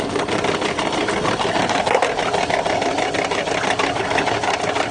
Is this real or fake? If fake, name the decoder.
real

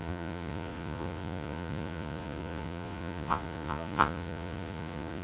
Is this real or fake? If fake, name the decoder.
fake, vocoder, Vocos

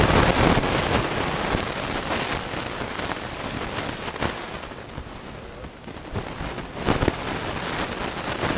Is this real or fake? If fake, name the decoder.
real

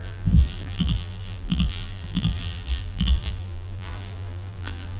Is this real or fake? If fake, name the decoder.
fake, vocoder, BigVGAN v2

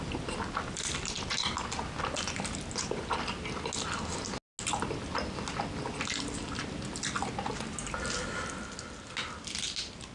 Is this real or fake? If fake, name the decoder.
real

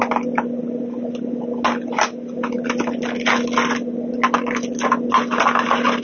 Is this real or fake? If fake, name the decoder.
real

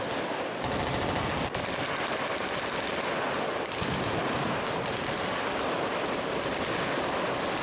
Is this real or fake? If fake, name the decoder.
real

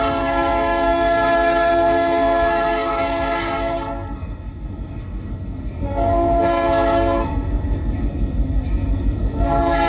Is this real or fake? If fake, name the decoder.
fake, codec, SNAC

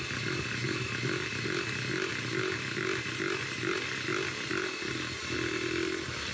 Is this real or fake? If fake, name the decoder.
real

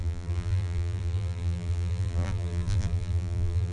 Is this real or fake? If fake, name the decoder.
fake, vocoder, BigVGAN v2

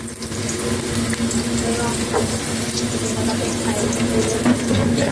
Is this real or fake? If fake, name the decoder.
real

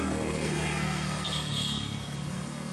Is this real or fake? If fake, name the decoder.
fake, codec, SNAC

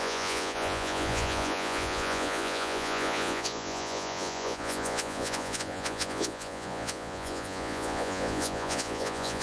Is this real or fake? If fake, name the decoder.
fake, vocoder, Vocos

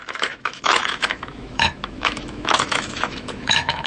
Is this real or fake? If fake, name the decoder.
fake, autoencoder, DAC-VAE